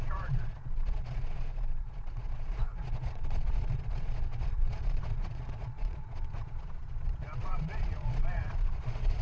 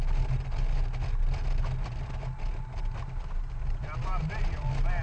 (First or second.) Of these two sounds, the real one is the second